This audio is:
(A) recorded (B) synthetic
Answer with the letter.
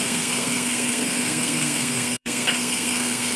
B